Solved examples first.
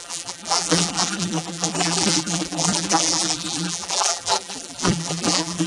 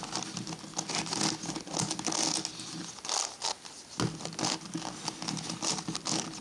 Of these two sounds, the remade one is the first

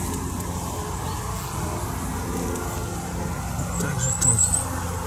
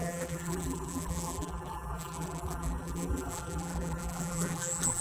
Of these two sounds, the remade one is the second